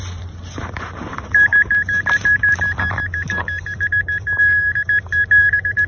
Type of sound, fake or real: fake